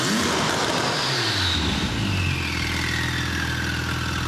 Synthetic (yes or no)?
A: no